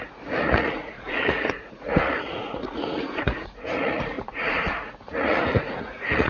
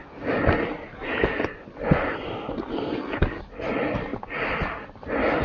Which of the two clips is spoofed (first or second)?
first